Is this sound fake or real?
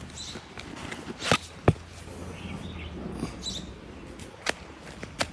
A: real